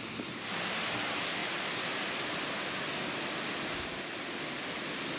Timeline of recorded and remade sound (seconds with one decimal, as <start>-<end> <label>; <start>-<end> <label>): 0.0-5.2 recorded

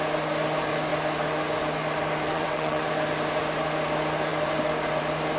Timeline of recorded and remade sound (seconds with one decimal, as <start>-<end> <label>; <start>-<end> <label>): 0.0-2.3 recorded; 2.3-2.9 remade; 2.9-5.4 recorded

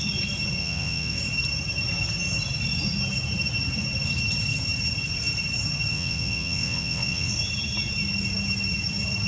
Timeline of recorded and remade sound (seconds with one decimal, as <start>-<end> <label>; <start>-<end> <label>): 0.0-0.6 recorded; 0.6-1.2 remade; 1.2-5.9 recorded; 5.9-7.3 remade; 7.3-9.3 recorded

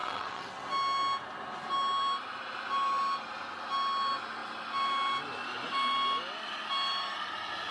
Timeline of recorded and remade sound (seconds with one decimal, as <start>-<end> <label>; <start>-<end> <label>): 0.0-0.6 remade; 0.6-7.7 recorded